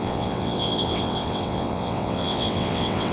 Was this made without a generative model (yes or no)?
no